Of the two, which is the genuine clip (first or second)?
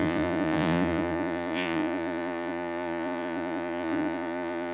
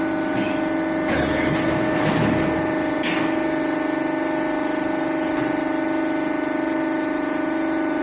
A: second